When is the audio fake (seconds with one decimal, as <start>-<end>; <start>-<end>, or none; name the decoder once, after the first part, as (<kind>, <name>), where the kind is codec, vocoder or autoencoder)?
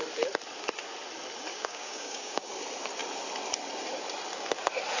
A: 1.5-2.5 (codec, DAC)